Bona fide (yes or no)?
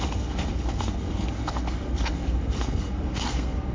no